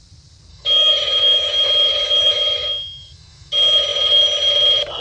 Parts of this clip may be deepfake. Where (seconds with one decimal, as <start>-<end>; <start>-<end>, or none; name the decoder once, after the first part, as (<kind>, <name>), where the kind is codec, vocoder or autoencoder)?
0.5-3.5 (autoencoder, DAC-VAE)